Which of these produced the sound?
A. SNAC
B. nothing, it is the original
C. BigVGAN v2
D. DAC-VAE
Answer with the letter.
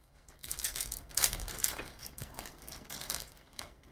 A